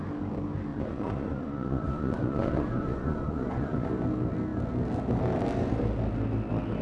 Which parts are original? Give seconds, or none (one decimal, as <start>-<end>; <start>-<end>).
0.0-0.7; 3.9-6.8

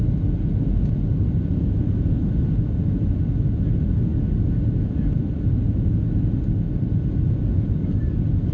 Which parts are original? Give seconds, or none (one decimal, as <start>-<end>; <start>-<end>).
0.0-8.5

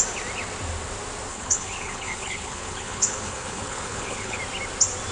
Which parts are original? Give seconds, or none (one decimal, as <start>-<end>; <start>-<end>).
0.0-1.3; 4.4-5.1

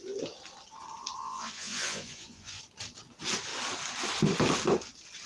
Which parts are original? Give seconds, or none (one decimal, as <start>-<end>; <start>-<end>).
0.0-1.2; 2.6-5.3

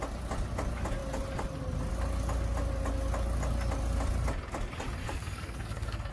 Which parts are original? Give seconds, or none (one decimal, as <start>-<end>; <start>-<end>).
0.0-5.0

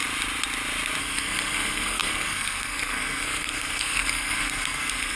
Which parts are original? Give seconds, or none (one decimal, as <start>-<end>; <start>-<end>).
0.0-1.0

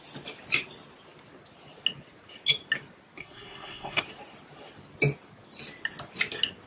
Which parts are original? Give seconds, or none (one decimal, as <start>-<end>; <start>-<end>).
0.0-3.2; 4.0-6.7